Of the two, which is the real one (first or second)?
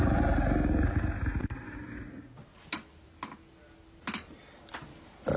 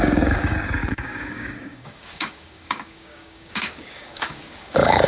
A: first